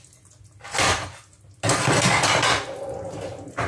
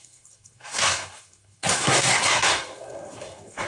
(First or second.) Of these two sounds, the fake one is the second